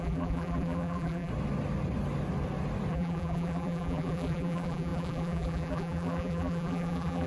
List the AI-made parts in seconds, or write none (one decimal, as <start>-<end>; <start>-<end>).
0.0-1.3; 2.9-7.3